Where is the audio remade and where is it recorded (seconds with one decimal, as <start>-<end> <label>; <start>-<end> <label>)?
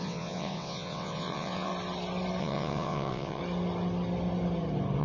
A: 0.0-1.7 remade; 1.7-2.4 recorded; 2.4-3.4 remade; 3.4-5.0 recorded